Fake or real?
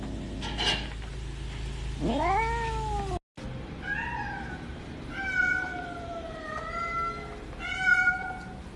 real